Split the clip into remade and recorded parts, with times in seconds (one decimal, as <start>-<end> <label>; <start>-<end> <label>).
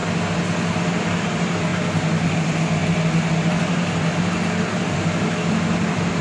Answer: 0.0-0.9 recorded; 0.9-1.7 remade; 1.7-2.3 recorded; 2.3-2.8 remade; 2.8-4.6 recorded; 4.6-6.2 remade